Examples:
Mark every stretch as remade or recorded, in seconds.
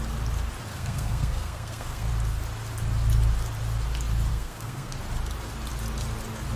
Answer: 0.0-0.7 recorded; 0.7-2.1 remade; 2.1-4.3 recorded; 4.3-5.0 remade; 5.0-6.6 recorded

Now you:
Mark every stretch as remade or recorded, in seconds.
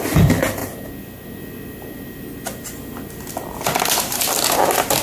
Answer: 0.0-5.0 recorded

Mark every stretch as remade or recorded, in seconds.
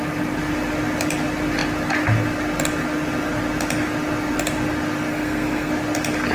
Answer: 0.0-5.1 recorded; 5.1-5.7 remade; 5.7-6.3 recorded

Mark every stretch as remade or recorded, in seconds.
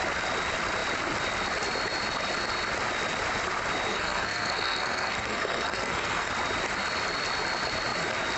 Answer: 0.0-3.9 recorded; 3.9-6.3 remade; 6.3-8.4 recorded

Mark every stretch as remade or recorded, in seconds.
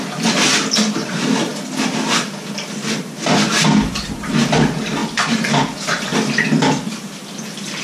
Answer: 0.0-5.0 recorded; 5.0-6.1 remade; 6.1-7.8 recorded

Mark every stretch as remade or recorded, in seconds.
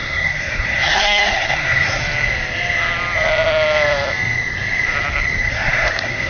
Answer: 0.0-2.0 remade; 2.0-5.5 recorded; 5.5-6.3 remade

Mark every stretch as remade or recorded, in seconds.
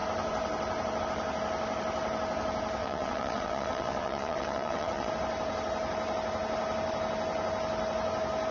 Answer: 0.0-2.8 recorded; 2.8-5.1 remade; 5.1-8.5 recorded